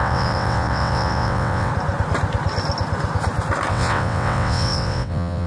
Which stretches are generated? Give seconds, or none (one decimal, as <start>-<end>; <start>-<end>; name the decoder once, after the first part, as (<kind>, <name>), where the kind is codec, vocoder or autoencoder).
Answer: 0.0-1.7 (vocoder, WaveNeXt); 3.7-5.5

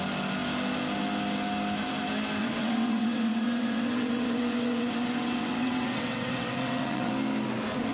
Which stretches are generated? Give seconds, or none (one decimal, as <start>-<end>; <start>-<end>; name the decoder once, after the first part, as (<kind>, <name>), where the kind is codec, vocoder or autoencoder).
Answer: 2.4-7.1 (vocoder, WaveNeXt)

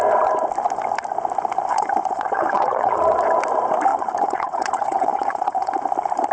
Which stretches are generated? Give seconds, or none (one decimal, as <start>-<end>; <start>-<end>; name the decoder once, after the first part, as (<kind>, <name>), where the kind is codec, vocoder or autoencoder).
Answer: 1.7-3.0 (vocoder, WaveNeXt); 3.9-5.8